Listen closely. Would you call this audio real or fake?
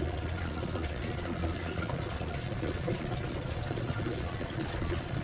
fake